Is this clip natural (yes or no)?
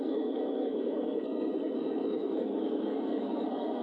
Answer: no